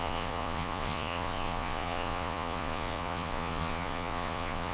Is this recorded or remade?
remade